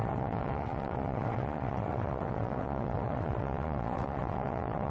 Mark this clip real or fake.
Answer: fake